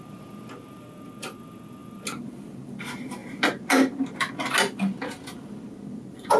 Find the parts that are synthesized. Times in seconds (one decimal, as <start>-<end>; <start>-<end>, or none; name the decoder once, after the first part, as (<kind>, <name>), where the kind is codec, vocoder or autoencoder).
none